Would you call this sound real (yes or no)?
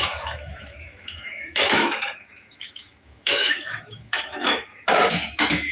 no